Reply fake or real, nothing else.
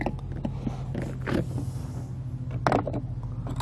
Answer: real